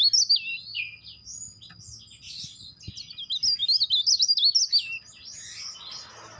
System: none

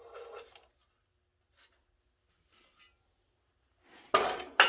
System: none